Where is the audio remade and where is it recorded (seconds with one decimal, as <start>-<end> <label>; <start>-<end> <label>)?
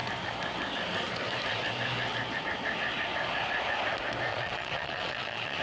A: 0.0-4.3 recorded; 4.3-5.6 remade